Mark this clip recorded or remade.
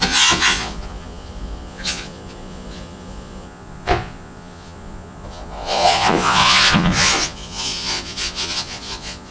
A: remade